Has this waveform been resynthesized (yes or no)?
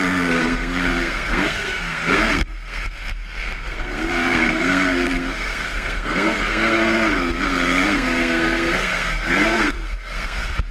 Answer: yes